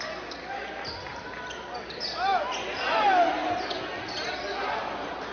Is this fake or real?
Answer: real